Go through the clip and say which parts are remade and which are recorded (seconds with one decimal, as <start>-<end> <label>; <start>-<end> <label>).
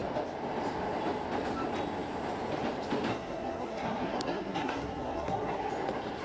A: 0.0-3.1 recorded; 3.1-5.7 remade; 5.7-6.2 recorded